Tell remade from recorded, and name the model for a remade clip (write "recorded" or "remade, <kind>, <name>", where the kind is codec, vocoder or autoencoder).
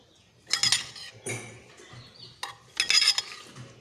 recorded